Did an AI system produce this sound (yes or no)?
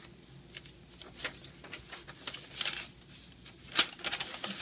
no